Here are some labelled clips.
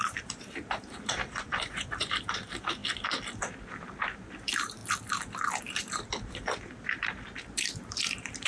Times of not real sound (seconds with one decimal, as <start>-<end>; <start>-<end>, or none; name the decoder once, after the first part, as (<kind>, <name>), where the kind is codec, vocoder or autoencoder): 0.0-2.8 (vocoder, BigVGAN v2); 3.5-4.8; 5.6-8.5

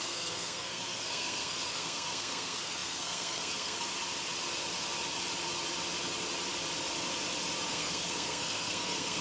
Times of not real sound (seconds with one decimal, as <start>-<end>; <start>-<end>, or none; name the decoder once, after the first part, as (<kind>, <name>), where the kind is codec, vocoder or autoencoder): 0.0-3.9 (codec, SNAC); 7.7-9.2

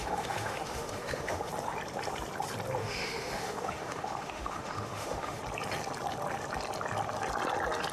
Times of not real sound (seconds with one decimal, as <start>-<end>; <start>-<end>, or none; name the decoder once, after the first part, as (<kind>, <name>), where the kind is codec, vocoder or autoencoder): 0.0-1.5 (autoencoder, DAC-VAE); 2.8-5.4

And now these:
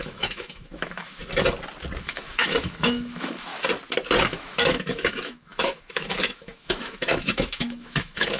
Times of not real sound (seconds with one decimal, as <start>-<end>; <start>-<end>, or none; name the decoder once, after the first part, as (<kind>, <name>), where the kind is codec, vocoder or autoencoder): 0.0-1.2 (autoencoder, DAC-VAE); 2.0-3.5; 4.2-8.4